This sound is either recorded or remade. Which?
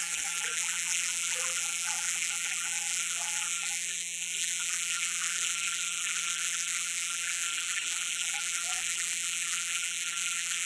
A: remade